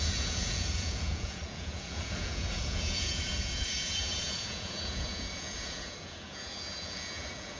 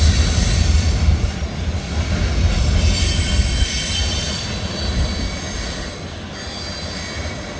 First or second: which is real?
second